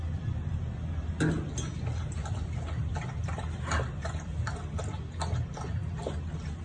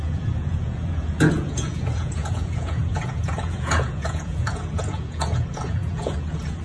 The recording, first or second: first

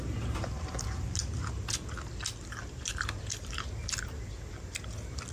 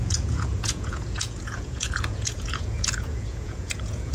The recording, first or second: first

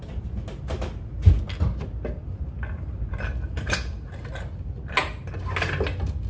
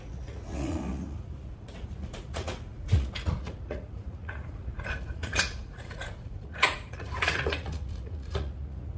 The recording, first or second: first